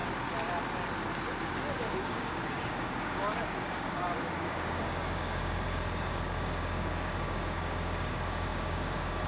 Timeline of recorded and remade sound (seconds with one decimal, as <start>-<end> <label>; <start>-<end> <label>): 0.0-1.7 recorded; 1.7-9.3 remade